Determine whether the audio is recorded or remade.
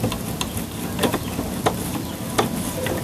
recorded